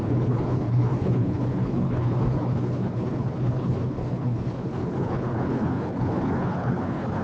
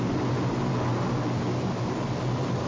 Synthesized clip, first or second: first